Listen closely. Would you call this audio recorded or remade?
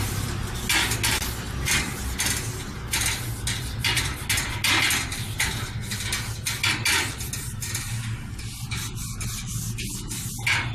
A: recorded